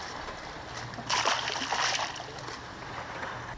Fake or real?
real